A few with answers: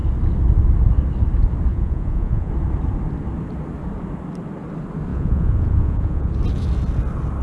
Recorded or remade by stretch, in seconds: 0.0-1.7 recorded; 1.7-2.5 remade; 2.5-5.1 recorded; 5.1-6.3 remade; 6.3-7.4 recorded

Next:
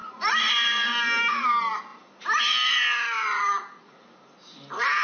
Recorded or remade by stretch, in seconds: 0.0-3.2 recorded; 3.2-4.0 remade; 4.0-5.0 recorded

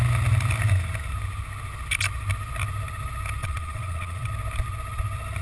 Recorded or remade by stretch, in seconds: 0.0-3.4 recorded; 3.4-4.3 remade; 4.3-5.4 recorded

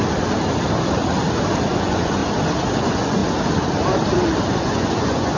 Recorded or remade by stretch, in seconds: 0.0-1.7 recorded; 1.7-2.2 remade; 2.2-2.8 recorded; 2.8-3.2 remade; 3.2-4.6 recorded; 4.6-5.4 remade